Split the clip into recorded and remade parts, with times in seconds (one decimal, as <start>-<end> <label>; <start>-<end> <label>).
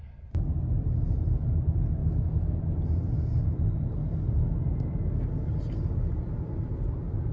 0.0-2.0 recorded; 2.0-2.6 remade; 2.6-7.3 recorded